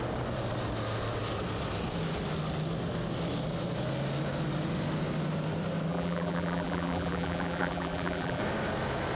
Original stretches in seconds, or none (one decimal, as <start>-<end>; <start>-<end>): 0.0-5.9; 8.4-9.1